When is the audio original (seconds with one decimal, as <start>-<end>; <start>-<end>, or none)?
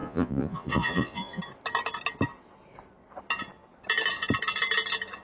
1.4-5.2